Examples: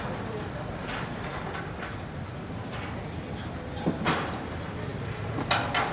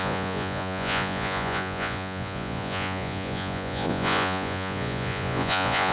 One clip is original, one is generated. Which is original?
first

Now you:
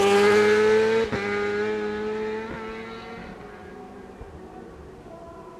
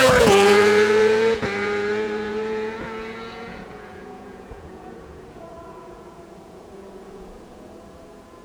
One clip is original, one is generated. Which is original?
first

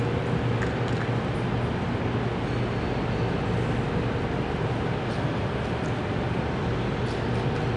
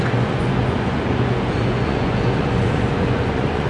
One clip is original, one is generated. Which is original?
first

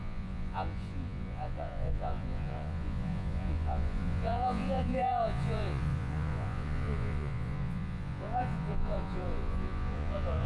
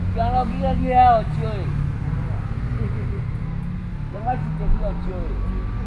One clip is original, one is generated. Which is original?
second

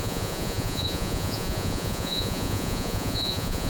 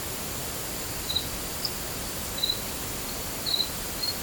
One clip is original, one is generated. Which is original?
second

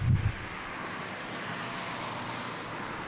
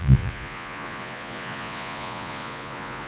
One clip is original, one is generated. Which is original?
first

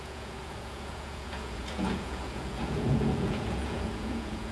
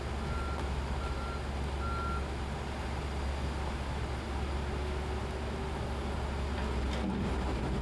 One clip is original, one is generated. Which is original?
second